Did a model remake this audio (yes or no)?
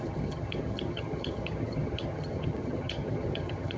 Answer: yes